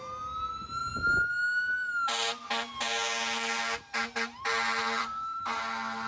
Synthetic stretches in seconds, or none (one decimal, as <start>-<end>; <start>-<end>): 5.0-5.6